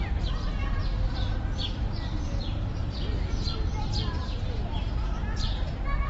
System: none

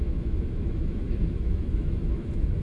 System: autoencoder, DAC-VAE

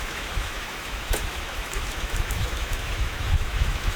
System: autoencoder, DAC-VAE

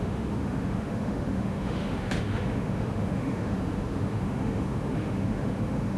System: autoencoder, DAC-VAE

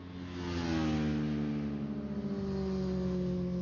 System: none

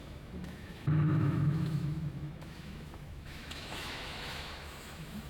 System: autoencoder, DAC-VAE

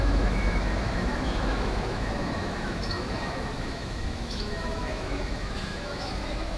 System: autoencoder, DAC-VAE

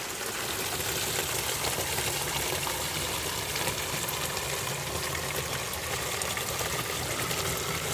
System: none